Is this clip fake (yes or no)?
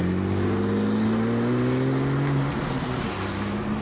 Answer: no